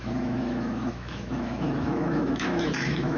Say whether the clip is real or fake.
fake